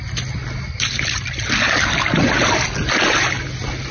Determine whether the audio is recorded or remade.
recorded